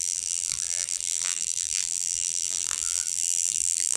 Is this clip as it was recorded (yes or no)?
no